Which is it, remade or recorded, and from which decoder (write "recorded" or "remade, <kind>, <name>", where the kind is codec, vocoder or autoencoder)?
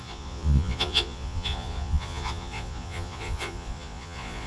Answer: remade, vocoder, Vocos